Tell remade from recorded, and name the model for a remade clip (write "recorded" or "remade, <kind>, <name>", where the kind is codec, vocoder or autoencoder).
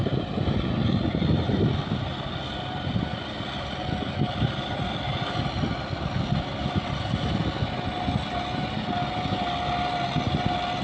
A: recorded